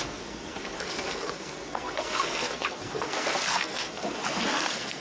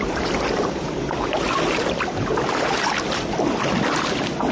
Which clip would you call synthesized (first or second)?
first